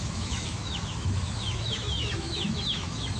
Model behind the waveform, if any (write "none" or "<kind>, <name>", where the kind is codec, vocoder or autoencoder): autoencoder, DAC-VAE